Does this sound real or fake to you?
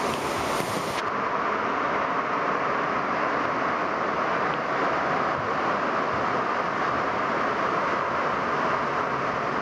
real